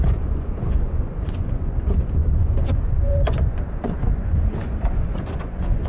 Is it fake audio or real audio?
fake